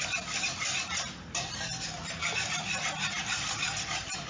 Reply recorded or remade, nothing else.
recorded